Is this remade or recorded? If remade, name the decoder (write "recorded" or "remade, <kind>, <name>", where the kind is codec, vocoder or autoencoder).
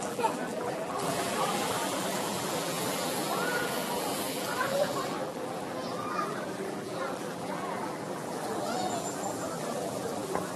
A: remade, vocoder, BigVGAN v2